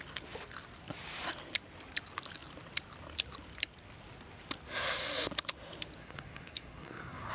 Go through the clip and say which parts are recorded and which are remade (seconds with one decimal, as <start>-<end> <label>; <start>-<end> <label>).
0.0-6.0 recorded; 6.0-7.3 remade